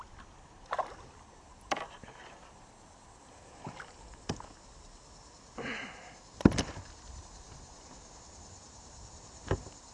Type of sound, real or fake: real